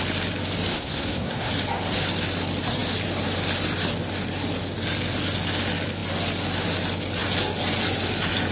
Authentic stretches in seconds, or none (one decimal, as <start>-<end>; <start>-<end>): 0.0-0.7; 1.5-8.5